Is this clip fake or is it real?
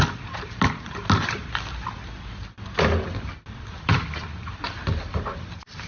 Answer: real